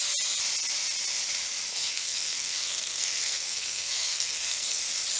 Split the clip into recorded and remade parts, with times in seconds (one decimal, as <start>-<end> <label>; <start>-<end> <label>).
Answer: 0.0-1.7 recorded; 1.7-4.8 remade; 4.8-5.2 recorded